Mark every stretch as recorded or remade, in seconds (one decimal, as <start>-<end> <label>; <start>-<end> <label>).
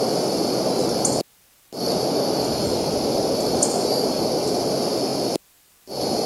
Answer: 0.0-0.8 remade; 0.8-3.5 recorded; 3.5-6.3 remade